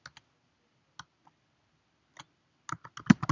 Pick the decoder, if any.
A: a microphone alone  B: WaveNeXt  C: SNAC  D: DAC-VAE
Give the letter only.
A